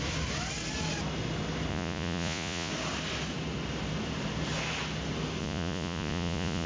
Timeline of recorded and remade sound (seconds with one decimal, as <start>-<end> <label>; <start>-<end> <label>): 0.0-1.7 recorded; 1.7-2.7 remade; 2.7-5.4 recorded; 5.4-6.7 remade